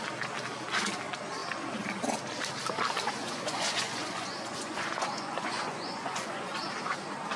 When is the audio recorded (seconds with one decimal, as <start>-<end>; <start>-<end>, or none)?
0.0-3.2; 6.6-7.4